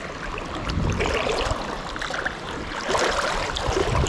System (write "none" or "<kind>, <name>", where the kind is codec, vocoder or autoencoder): none